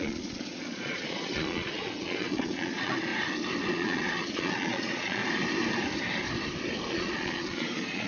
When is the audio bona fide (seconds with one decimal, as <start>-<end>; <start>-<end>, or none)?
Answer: 3.1-3.7; 5.2-6.9